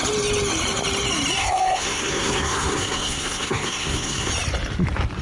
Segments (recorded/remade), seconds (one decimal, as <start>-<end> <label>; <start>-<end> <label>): 0.0-1.4 recorded; 1.4-4.3 remade; 4.3-5.2 recorded

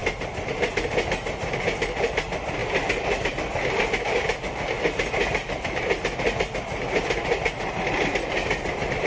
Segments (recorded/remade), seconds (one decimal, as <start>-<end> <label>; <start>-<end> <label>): 0.0-9.1 recorded

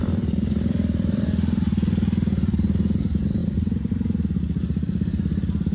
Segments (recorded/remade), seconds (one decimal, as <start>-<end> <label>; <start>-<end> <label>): 0.0-5.7 recorded

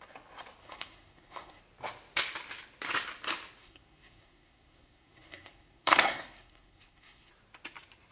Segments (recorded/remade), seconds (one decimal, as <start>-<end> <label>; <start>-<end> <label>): 0.0-0.6 recorded; 0.6-1.6 remade; 1.6-3.6 recorded; 3.6-7.3 remade; 7.3-8.1 recorded

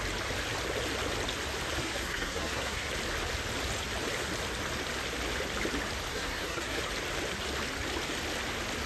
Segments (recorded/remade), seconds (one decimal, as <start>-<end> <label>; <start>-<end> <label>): 0.0-1.8 recorded; 1.8-2.9 remade; 2.9-6.1 recorded; 6.1-6.8 remade; 6.8-8.9 recorded

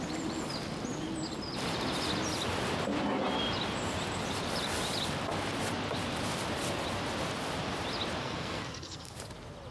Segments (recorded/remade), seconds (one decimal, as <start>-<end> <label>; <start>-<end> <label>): 0.0-8.2 recorded; 8.2-9.1 remade; 9.1-9.7 recorded

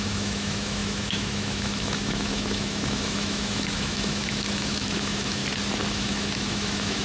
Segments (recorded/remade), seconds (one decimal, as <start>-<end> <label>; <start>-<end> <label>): 0.0-5.4 remade; 5.4-5.9 recorded; 5.9-7.0 remade